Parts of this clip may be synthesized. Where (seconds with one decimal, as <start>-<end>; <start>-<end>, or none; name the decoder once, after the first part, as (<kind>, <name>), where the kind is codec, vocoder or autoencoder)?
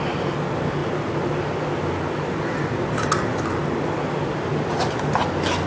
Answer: none